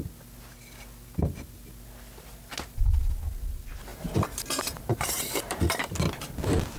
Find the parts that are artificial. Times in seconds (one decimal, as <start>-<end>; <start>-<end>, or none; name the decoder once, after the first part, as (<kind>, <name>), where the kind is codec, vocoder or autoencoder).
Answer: 4.9-5.6 (vocoder, BigVGAN v2)